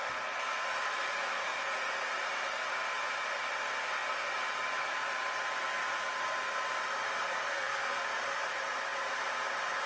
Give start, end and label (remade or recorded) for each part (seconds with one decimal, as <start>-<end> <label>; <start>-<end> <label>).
0.0-7.5 recorded; 7.5-8.0 remade; 8.0-9.9 recorded

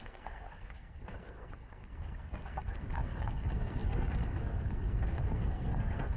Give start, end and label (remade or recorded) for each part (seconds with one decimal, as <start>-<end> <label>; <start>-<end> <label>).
0.0-6.2 remade

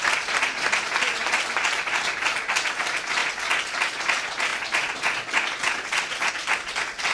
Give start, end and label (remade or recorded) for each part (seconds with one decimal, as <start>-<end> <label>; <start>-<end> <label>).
0.0-7.1 recorded

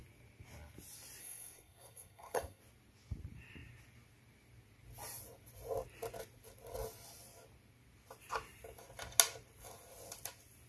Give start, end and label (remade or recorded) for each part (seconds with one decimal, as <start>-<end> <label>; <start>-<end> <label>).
0.0-1.2 recorded; 1.2-2.6 remade; 2.6-10.7 recorded

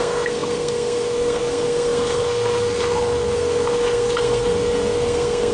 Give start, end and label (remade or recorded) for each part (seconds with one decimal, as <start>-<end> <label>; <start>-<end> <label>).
0.0-5.5 remade

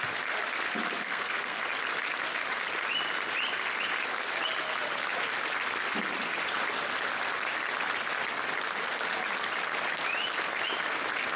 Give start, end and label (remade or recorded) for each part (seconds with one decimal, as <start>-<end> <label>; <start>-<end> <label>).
0.0-1.0 recorded; 1.0-1.6 remade; 1.6-11.4 recorded

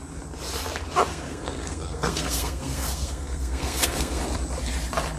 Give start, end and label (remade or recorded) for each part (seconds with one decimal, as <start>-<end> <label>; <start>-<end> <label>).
0.0-1.1 recorded; 1.1-4.2 remade; 4.2-5.2 recorded

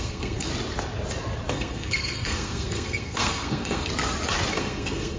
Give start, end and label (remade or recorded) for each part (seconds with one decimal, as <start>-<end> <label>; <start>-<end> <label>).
0.0-0.5 remade; 0.5-1.5 recorded; 1.5-3.9 remade; 3.9-4.5 recorded; 4.5-5.2 remade